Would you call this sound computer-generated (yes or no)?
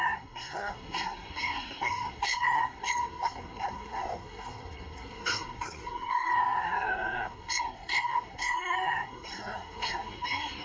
yes